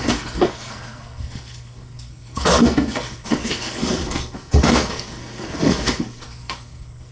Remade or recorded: remade